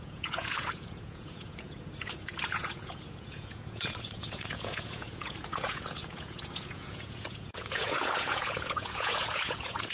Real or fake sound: fake